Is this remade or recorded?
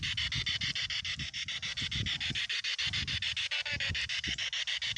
recorded